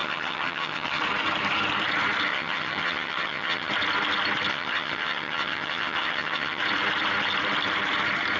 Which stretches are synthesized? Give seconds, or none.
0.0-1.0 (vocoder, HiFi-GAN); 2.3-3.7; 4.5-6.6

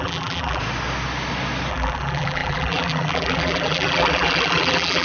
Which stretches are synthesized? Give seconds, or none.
0.0-0.6 (vocoder, BigVGAN v2); 1.7-5.0

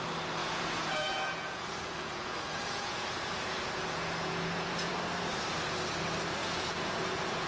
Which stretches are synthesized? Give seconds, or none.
0.4-4.9 (vocoder, Vocos); 6.4-7.5

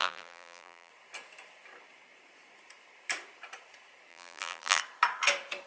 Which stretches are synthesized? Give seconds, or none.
0.0-0.9 (vocoder, BigVGAN v2); 4.1-4.8

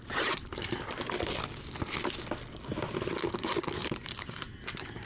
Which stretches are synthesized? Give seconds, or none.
0.0-0.5 (vocoder, BigVGAN v2); 3.6-5.1

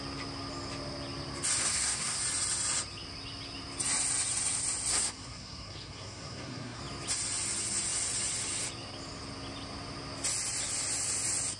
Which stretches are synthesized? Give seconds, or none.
1.6-2.2 (codec, SNAC); 4.9-6.8

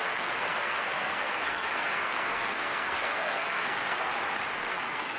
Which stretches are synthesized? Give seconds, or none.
0.0-4.1 (codec, SNAC); 4.7-5.2